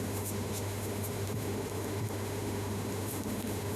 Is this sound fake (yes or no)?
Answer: yes